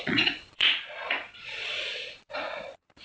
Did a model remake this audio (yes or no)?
yes